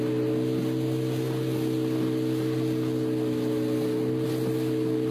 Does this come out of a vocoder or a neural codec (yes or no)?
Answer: no